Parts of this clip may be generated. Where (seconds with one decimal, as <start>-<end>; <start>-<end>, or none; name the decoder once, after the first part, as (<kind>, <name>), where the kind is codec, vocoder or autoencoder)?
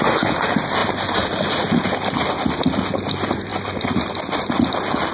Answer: none